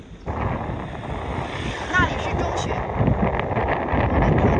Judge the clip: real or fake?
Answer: real